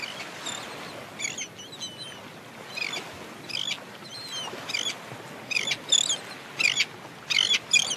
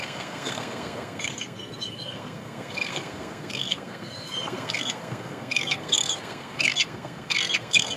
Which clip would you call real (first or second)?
first